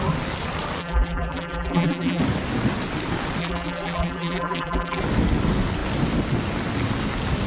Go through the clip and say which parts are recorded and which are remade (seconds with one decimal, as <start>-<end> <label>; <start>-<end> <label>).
0.0-0.8 recorded; 0.8-2.2 remade; 2.2-3.4 recorded; 3.4-5.0 remade; 5.0-7.5 recorded